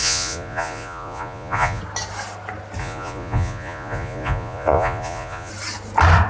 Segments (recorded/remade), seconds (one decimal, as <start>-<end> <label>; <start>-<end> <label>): 0.0-1.8 remade; 1.8-2.8 recorded; 2.8-5.5 remade; 5.5-6.3 recorded